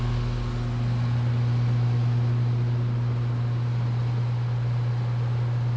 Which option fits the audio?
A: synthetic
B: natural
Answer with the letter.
B